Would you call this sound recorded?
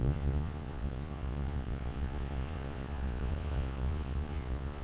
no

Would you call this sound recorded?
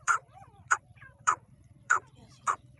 no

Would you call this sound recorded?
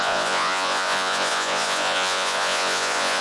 no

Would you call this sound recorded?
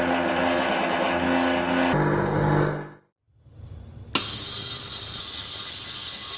yes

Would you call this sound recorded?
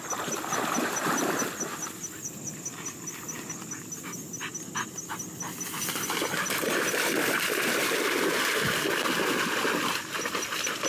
yes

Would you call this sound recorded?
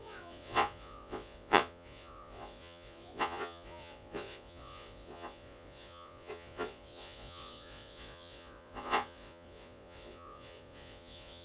no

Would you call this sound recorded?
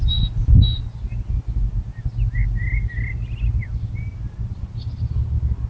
yes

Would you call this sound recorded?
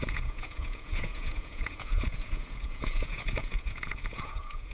no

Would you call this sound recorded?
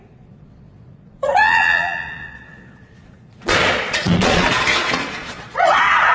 no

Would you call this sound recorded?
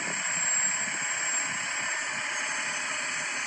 yes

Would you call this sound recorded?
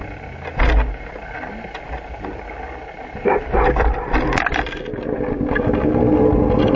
yes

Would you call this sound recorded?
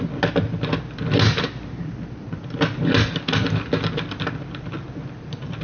yes